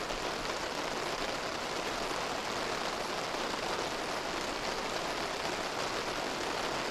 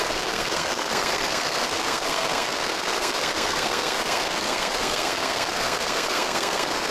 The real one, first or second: first